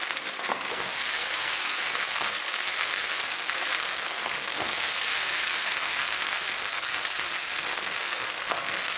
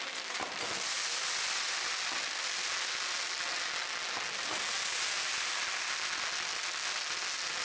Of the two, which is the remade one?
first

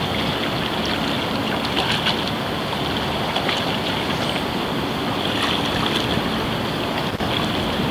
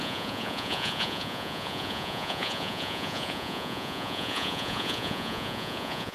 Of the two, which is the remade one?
second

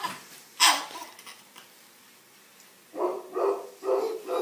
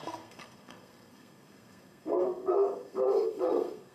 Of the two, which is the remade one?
second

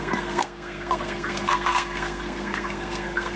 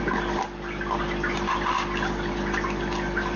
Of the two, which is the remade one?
first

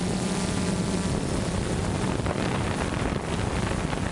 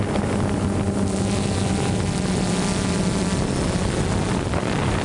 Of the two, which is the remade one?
first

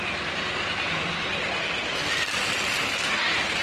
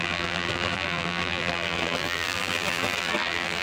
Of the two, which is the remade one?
second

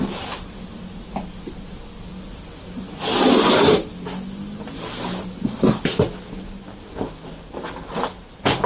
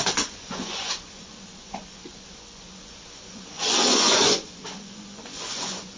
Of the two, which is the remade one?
second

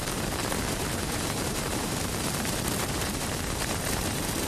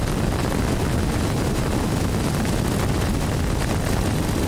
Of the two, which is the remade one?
first